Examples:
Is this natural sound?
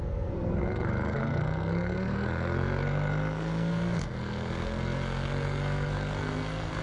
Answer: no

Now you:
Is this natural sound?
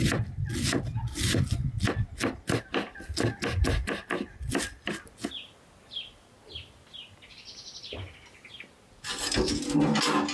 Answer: yes